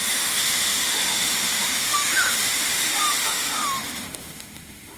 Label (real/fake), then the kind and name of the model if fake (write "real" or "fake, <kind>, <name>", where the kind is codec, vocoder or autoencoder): fake, autoencoder, DAC-VAE